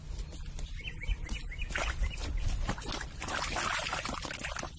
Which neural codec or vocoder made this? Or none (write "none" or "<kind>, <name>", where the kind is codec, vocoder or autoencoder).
none